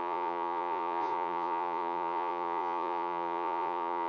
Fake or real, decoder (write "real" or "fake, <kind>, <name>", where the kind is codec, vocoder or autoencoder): fake, vocoder, Vocos